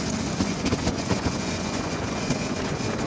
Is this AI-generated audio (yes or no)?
yes